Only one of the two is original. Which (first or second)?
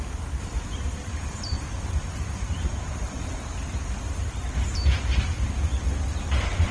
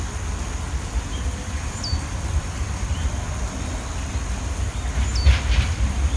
second